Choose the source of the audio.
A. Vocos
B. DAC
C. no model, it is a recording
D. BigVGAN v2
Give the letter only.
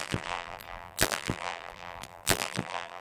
D